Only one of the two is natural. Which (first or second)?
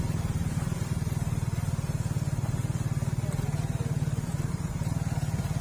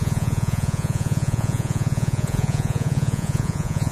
first